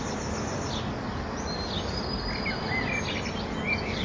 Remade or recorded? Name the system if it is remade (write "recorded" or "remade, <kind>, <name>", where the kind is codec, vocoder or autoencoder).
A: recorded